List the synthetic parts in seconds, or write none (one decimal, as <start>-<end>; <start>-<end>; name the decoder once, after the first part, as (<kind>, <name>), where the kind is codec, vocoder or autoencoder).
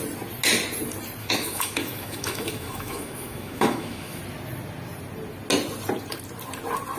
1.2-4.2 (autoencoder, DAC-VAE)